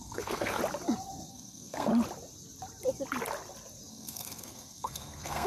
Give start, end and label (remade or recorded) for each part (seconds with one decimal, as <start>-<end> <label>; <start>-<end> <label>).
0.0-0.6 remade; 0.6-1.3 recorded; 1.3-1.9 remade; 1.9-3.9 recorded; 3.9-5.5 remade